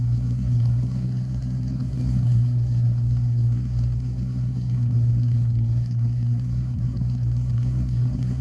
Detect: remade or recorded remade